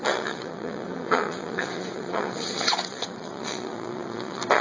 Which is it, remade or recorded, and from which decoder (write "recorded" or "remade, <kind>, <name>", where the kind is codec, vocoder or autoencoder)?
remade, vocoder, WaveNeXt